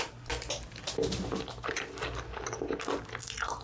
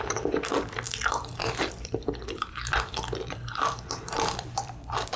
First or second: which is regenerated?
second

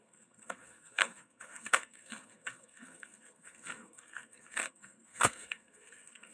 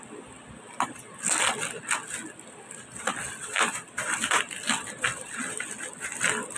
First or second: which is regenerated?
first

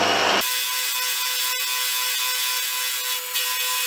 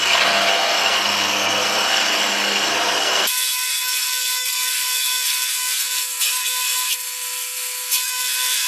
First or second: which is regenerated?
second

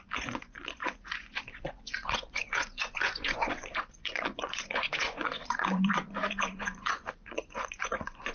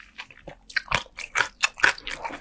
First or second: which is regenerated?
first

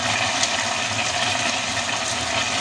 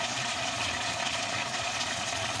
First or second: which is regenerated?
second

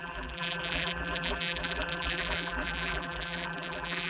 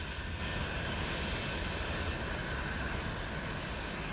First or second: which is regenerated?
first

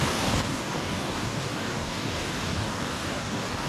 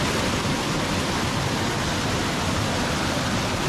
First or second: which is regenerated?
first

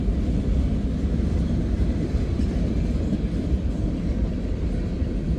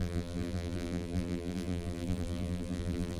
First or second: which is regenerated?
second